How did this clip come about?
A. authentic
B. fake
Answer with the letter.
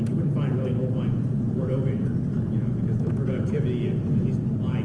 A